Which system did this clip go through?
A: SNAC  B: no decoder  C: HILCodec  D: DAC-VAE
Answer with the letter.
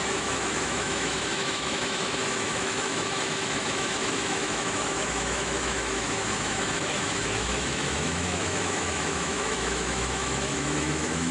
D